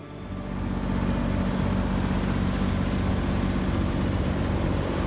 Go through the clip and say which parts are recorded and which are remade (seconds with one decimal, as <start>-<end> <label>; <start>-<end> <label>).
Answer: 0.0-5.1 recorded